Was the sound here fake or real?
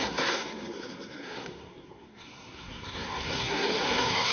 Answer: fake